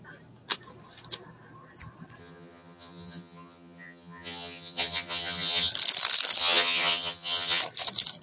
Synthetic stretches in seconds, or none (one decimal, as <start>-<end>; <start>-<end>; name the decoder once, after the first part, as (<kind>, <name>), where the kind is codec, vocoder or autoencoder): 2.2-5.7 (vocoder, HiFi-GAN); 6.4-7.6